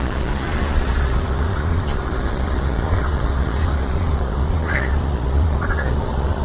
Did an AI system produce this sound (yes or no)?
yes